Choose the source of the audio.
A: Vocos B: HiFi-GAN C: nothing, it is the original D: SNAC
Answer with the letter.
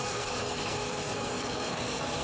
D